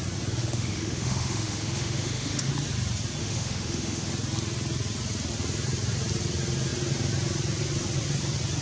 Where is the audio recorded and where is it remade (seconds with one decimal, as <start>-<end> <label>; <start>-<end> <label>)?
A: 0.0-0.4 recorded; 0.4-2.5 remade; 2.5-3.2 recorded; 3.2-4.1 remade; 4.1-8.6 recorded